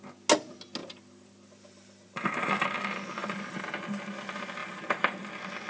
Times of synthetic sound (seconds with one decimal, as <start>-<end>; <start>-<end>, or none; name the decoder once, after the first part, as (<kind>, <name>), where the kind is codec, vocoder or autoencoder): 0.8-2.5 (vocoder, BigVGAN v2); 3.2-4.0; 4.6-5.3